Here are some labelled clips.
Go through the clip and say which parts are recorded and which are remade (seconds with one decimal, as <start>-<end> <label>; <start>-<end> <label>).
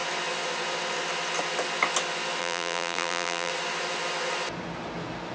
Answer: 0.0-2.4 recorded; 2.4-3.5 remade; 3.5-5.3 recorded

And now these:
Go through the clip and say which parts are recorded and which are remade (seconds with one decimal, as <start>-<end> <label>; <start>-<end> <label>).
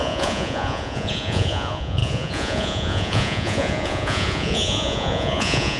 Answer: 0.0-5.8 remade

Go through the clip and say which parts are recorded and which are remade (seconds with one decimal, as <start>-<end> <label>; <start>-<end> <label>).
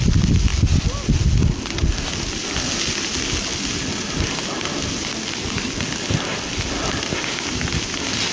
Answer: 0.0-8.3 recorded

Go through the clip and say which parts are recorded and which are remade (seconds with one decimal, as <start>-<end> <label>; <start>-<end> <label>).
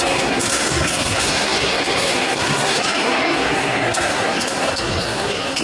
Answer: 0.0-5.6 remade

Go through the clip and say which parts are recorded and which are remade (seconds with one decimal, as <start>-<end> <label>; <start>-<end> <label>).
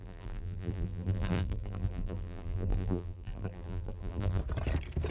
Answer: 0.0-4.4 remade; 4.4-5.1 recorded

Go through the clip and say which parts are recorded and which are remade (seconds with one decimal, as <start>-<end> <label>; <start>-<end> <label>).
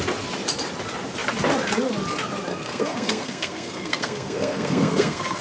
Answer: 0.0-2.5 recorded; 2.5-5.4 remade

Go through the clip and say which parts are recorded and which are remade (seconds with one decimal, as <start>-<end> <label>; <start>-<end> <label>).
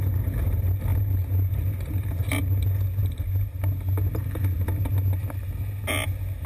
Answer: 0.0-6.5 recorded